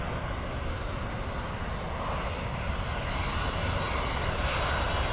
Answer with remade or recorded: recorded